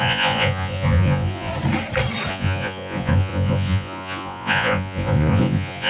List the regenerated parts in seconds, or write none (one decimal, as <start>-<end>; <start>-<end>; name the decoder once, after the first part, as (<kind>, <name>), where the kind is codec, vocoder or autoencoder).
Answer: 0.0-1.5 (vocoder, Vocos); 2.3-5.9